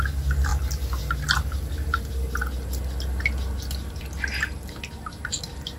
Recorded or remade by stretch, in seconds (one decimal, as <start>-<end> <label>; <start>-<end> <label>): 0.0-5.8 recorded